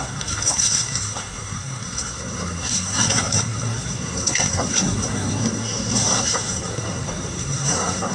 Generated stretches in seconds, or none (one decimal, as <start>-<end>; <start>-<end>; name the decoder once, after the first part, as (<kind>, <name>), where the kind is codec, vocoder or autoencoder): 0.0-8.1 (codec, SNAC)